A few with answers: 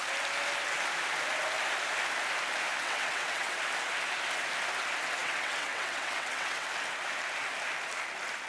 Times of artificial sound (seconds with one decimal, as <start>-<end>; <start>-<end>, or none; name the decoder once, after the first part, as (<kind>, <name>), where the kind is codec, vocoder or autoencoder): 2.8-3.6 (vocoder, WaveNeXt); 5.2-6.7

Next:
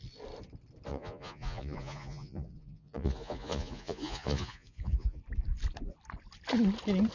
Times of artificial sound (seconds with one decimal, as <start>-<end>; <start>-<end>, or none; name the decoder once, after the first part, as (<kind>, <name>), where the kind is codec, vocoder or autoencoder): 0.9-5.2 (vocoder, Vocos)

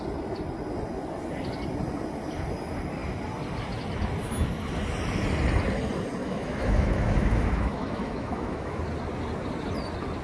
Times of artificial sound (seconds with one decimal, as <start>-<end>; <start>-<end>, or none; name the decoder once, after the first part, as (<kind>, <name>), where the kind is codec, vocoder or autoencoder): 6.2-8.8 (autoencoder, DAC-VAE)

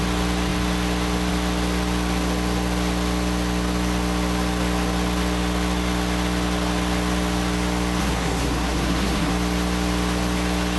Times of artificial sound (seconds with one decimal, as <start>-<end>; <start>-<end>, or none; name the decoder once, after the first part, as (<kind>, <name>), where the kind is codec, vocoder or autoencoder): 8.0-9.3 (codec, SNAC)

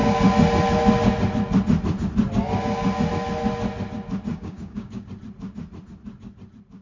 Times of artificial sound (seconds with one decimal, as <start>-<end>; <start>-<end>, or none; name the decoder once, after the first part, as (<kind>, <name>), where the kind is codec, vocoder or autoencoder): 4.3-5.1 (codec, DAC)